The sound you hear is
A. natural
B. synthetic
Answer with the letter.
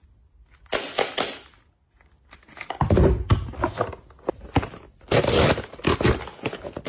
A